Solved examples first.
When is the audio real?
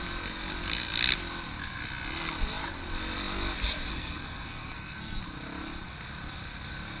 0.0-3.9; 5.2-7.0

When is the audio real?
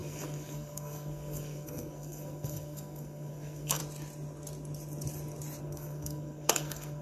3.8-5.6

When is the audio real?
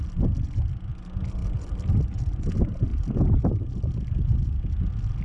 0.0-5.2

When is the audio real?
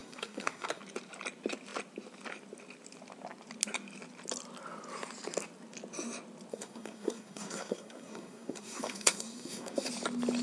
0.8-6.5; 9.9-10.4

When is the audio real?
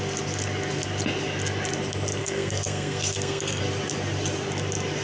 0.0-2.2; 3.6-5.0